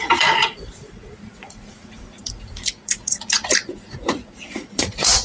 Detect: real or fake fake